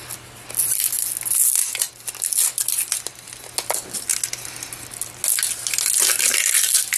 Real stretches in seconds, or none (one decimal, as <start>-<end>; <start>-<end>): 0.0-7.0